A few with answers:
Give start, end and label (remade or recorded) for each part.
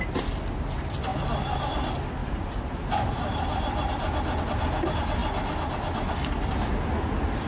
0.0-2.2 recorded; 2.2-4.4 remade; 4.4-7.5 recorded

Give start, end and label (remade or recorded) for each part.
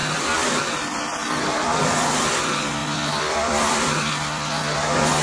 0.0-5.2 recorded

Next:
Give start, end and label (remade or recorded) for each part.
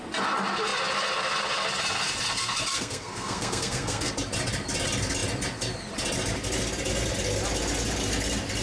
0.0-2.7 recorded; 2.7-4.1 remade; 4.1-8.6 recorded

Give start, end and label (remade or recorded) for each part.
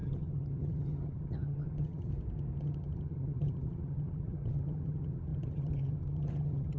0.0-2.1 remade; 2.1-2.6 recorded; 2.6-6.8 remade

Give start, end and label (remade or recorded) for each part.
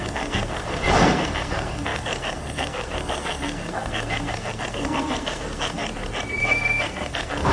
0.0-5.8 remade; 5.8-6.4 recorded; 6.4-7.5 remade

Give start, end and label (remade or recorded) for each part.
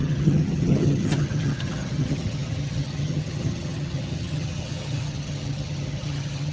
0.0-6.5 remade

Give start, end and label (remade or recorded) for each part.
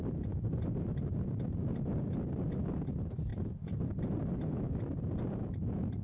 0.0-6.0 recorded